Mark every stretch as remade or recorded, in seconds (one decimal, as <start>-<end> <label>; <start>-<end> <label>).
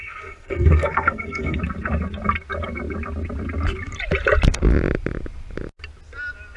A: 0.0-1.6 remade; 1.6-6.6 recorded